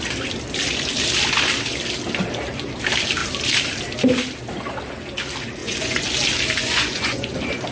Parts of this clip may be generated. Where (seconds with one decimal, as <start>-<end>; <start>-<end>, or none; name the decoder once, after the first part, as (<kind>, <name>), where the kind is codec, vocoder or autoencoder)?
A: 5.6-6.1 (vocoder, Vocos); 6.6-7.3